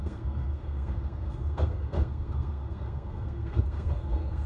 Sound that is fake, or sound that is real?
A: fake